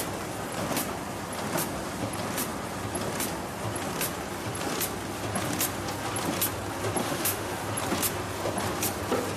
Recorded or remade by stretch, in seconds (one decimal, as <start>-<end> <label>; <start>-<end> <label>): 0.0-7.0 recorded; 7.0-7.5 remade; 7.5-9.4 recorded